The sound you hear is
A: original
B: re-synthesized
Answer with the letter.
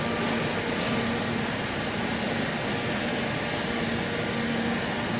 A